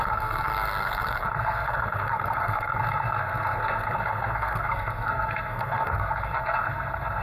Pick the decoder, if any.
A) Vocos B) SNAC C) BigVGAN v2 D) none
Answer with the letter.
B